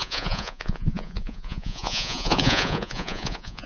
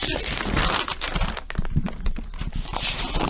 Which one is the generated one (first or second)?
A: first